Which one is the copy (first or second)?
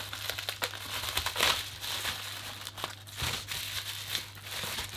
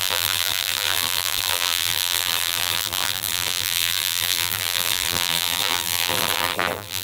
second